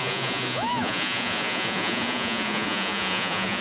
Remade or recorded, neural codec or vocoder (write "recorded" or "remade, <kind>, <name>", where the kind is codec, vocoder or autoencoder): remade, vocoder, Vocos